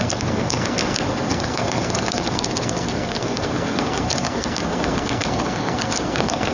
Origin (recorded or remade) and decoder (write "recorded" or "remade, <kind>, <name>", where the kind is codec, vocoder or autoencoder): remade, codec, SNAC